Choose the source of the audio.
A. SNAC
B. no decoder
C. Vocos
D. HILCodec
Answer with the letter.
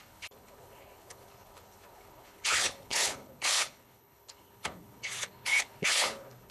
D